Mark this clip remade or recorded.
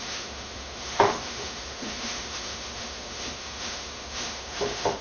remade